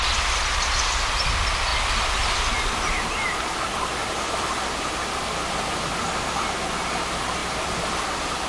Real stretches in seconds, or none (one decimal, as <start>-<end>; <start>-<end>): 0.0-8.5